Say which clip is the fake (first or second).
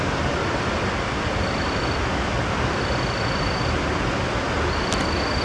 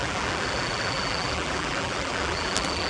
second